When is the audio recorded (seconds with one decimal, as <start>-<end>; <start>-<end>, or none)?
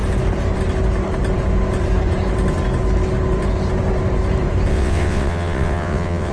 0.0-4.7